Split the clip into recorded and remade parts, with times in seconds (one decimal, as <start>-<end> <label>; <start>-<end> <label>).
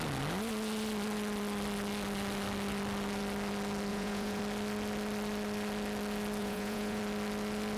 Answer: 0.0-3.9 recorded; 3.9-4.4 remade; 4.4-6.4 recorded; 6.4-7.0 remade; 7.0-7.8 recorded